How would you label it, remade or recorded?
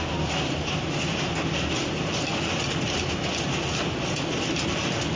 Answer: recorded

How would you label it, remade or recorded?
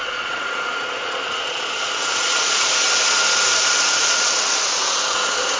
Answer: remade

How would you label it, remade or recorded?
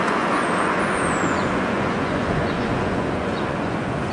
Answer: remade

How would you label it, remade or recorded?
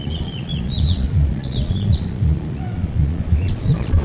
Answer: remade